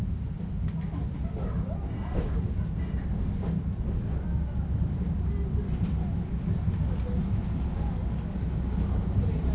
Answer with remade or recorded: recorded